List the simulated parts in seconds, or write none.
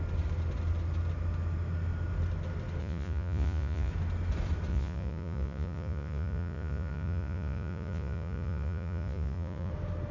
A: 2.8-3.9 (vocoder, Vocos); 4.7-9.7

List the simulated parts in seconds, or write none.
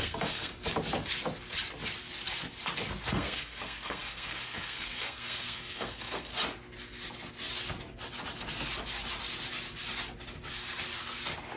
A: 0.0-0.5 (codec, SNAC); 3.1-6.3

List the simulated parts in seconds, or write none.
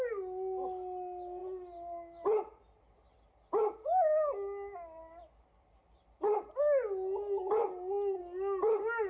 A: none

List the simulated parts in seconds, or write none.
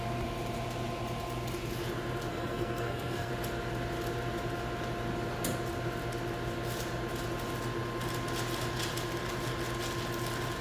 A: 2.3-3.3 (codec, SNAC)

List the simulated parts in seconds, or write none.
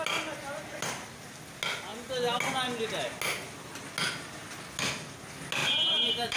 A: 5.6-6.4 (vocoder, BigVGAN v2)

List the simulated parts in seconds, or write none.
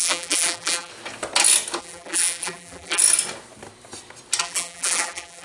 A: 0.0-0.9 (vocoder, BigVGAN v2); 1.8-3.0; 4.4-5.4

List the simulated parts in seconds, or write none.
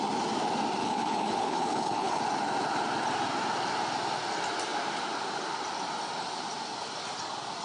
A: 0.8-2.2 (codec, HILCodec)